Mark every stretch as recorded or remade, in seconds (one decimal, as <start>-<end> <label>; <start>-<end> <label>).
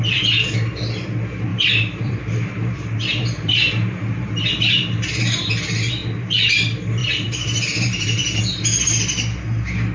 0.0-1.5 recorded; 1.5-5.5 remade; 5.5-7.0 recorded; 7.0-8.4 remade; 8.4-9.9 recorded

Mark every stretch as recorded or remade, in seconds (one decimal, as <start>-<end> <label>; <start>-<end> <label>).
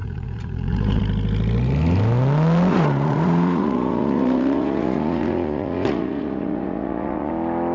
0.0-1.0 remade; 1.0-2.7 recorded; 2.7-7.3 remade; 7.3-7.7 recorded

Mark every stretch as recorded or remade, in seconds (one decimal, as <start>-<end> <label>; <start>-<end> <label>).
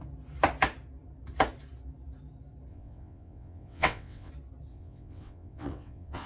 0.0-2.7 recorded; 2.7-4.3 remade; 4.3-4.7 recorded; 4.7-6.3 remade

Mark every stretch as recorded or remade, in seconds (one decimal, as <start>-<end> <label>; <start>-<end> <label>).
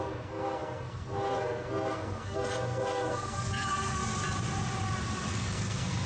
0.0-4.0 remade; 4.0-5.3 recorded; 5.3-6.1 remade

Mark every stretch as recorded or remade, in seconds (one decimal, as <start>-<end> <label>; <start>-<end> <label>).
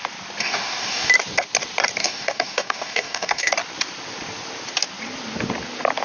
0.0-0.4 recorded; 0.4-1.1 remade; 1.1-2.0 recorded; 2.0-3.5 remade; 3.5-6.0 recorded